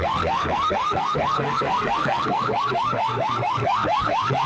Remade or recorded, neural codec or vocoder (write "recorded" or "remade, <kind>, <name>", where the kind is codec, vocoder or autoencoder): remade, codec, SNAC